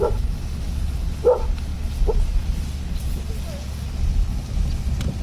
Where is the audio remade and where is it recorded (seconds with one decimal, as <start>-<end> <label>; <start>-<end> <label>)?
0.0-5.2 recorded